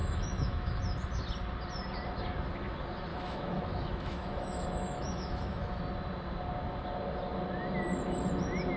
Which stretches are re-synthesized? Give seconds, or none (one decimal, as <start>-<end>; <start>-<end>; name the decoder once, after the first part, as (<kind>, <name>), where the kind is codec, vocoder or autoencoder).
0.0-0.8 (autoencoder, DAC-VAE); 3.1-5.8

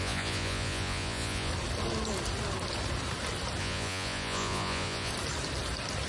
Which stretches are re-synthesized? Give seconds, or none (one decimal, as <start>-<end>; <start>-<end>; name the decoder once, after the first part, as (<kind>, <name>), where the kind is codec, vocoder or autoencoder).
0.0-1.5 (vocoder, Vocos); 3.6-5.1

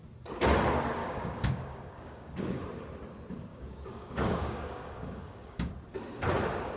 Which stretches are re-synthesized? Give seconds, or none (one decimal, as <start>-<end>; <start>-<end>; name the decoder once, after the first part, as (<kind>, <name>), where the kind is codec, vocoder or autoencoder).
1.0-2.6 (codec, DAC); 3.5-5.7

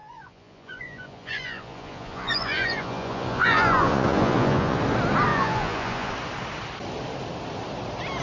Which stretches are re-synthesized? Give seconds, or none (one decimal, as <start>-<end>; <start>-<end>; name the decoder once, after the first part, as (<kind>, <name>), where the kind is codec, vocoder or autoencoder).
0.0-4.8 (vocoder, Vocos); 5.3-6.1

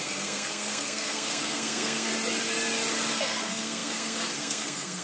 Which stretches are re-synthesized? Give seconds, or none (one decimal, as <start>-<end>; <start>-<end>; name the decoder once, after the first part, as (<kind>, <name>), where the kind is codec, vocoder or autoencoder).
0.0-2.1 (codec, SNAC); 3.1-5.0

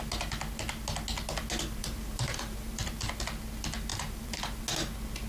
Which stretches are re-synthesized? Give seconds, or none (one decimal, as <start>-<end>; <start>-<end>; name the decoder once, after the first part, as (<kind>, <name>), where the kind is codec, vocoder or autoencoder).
1.8-3.1 (vocoder, BigVGAN v2); 3.9-4.6